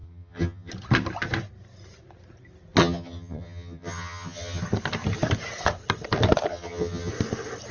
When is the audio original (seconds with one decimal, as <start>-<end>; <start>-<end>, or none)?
0.7-2.8; 4.6-6.5; 7.1-7.7